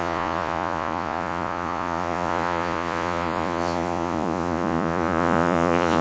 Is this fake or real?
fake